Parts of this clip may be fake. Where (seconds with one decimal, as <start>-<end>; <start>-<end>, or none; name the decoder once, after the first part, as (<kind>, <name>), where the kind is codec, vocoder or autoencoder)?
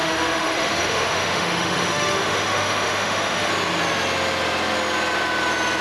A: 0.0-3.5 (autoencoder, DAC-VAE)